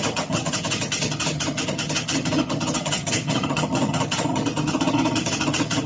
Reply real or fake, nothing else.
fake